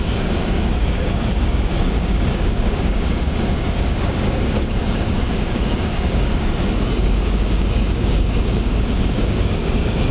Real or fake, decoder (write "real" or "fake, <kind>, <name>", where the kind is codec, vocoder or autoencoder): fake, codec, DAC